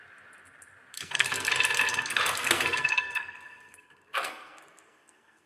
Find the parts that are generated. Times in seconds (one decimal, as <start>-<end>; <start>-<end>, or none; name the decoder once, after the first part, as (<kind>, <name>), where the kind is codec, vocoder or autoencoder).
0.9-1.5 (codec, SNAC); 1.9-5.5